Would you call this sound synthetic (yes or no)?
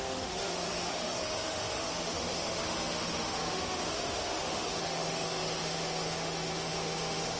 yes